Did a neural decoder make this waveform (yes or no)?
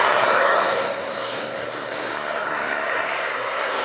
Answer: yes